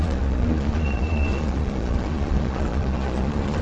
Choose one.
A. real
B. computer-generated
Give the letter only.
B